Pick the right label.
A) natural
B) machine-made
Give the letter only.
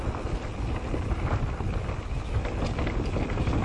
A